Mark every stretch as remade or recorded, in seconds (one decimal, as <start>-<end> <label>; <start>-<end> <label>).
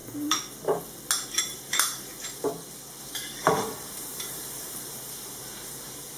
0.0-1.4 recorded; 1.4-2.5 remade; 2.5-3.0 recorded; 3.0-6.2 remade